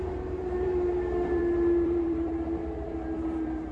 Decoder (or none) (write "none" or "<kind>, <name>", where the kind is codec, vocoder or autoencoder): vocoder, BigVGAN v2